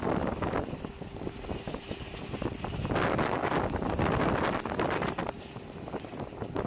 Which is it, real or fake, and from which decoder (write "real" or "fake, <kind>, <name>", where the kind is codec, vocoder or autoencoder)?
real